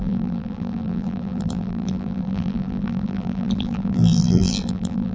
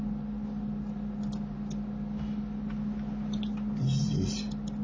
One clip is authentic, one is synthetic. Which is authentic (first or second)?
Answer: second